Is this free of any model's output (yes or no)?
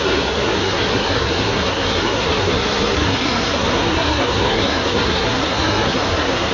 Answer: no